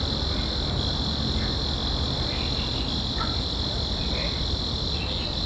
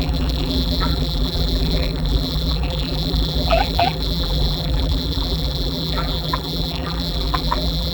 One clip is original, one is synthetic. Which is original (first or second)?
first